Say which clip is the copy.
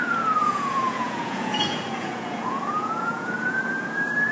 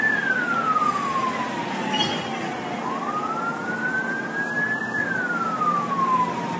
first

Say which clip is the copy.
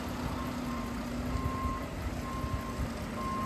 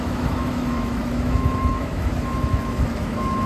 second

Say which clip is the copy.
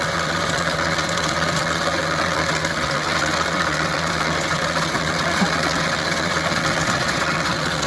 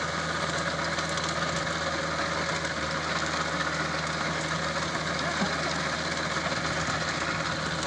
first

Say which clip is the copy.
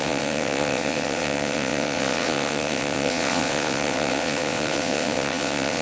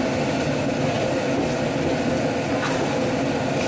first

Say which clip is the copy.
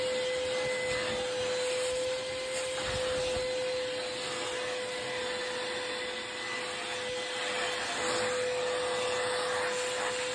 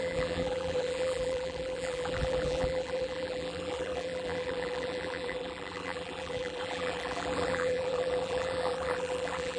second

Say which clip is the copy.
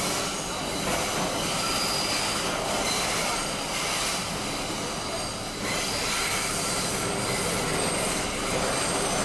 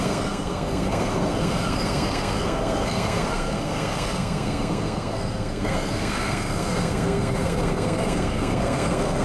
second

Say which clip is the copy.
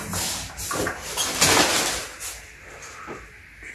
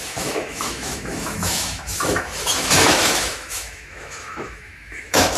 second